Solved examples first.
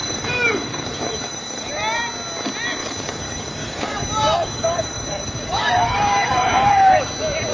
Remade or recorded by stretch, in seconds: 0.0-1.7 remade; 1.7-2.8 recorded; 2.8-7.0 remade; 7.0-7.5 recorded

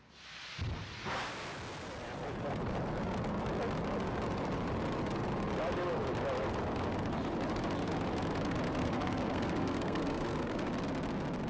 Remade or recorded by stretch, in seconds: 0.0-8.8 recorded; 8.8-10.7 remade; 10.7-11.5 recorded